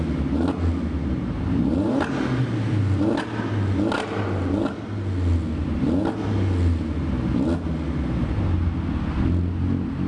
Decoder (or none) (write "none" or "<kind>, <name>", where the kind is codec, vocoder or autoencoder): none